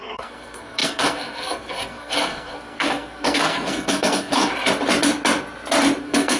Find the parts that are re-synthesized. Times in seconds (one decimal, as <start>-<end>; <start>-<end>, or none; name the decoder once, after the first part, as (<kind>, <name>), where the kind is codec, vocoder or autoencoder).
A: 0.0-4.5 (codec, SNAC); 6.0-6.4